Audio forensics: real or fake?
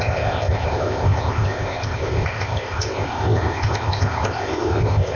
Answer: fake